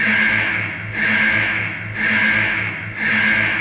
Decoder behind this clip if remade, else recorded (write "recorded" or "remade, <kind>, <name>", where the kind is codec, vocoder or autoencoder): recorded